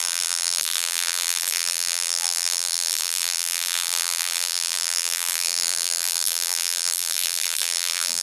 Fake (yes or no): yes